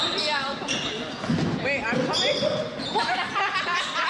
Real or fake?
real